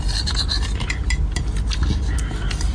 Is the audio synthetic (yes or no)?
no